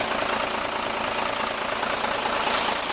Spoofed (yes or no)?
no